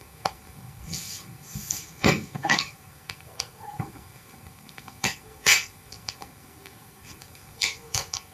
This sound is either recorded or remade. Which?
remade